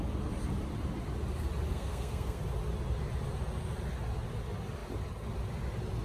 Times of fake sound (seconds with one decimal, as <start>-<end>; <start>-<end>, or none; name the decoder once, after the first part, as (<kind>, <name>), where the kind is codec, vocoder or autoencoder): 1.7-2.4 (codec, SNAC)